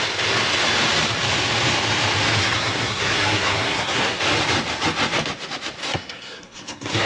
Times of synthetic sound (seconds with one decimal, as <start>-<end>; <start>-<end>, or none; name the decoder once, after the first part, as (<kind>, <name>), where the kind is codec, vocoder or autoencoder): 2.4-4.2 (codec, SNAC); 5.8-7.1